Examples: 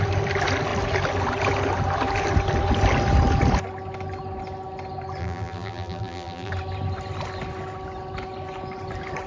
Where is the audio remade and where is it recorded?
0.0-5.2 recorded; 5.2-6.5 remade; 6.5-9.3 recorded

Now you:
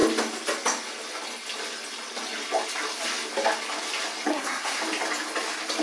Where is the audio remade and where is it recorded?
0.0-4.3 recorded; 4.3-4.8 remade; 4.8-5.8 recorded

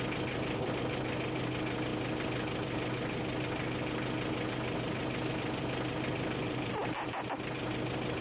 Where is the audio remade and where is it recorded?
0.0-8.2 recorded

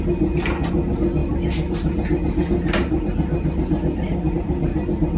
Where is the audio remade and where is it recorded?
0.0-5.2 recorded

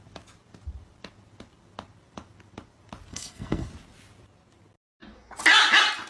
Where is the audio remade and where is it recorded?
0.0-3.1 recorded; 3.1-3.7 remade; 3.7-6.1 recorded

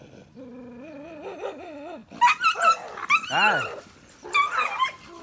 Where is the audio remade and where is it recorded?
0.0-5.2 recorded

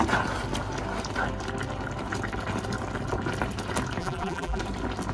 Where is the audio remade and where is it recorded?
0.0-4.0 recorded; 4.0-4.6 remade; 4.6-5.1 recorded